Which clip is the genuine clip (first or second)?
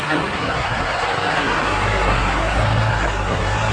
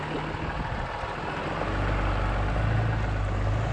second